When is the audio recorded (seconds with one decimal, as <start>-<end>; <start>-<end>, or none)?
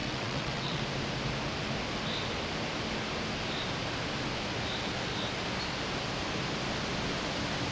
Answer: 0.8-7.7